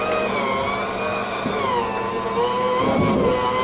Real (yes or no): yes